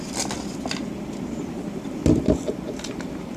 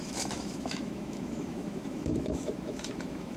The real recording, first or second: first